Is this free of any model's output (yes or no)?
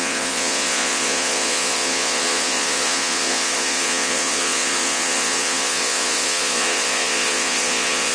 no